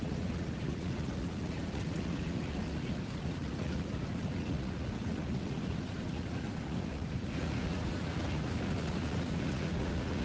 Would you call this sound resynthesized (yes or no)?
yes